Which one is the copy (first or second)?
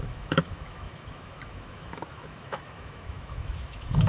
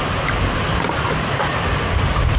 first